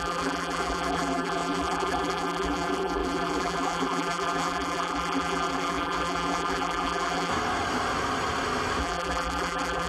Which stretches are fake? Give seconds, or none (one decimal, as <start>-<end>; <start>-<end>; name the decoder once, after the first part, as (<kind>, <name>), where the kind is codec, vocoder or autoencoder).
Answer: 0.0-7.3 (vocoder, BigVGAN v2); 8.8-9.9